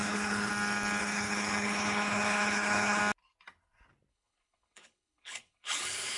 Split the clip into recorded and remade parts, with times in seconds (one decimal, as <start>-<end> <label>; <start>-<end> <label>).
0.0-0.5 remade; 0.5-1.0 recorded; 1.0-3.0 remade; 3.0-4.1 recorded; 4.1-6.2 remade